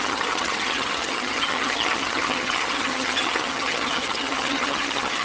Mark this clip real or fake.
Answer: fake